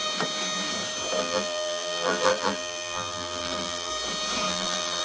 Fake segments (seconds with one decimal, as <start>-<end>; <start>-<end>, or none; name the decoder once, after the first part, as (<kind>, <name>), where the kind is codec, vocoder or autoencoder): 1.2-3.9 (vocoder, BigVGAN v2); 4.5-5.0